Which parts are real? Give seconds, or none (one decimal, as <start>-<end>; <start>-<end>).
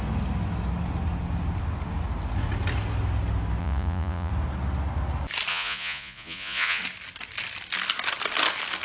0.0-3.6; 4.3-5.5; 6.8-8.8